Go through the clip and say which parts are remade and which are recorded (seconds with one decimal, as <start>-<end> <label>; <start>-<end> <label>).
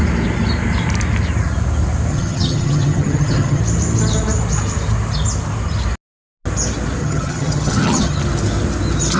0.0-2.1 recorded; 2.1-3.6 remade; 3.6-7.0 recorded; 7.0-8.2 remade; 8.2-9.2 recorded